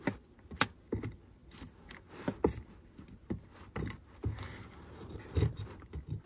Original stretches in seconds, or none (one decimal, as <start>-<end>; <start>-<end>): 0.0-6.3